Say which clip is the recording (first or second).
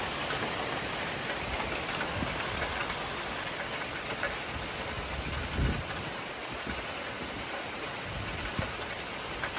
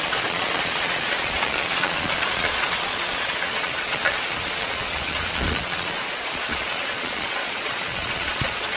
first